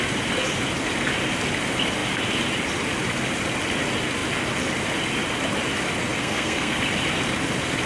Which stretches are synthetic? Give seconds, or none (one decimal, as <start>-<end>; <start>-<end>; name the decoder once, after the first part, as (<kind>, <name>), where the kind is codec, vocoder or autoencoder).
6.2-6.8 (codec, SNAC)